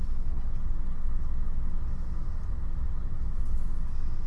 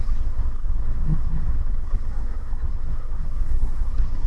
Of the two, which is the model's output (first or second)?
second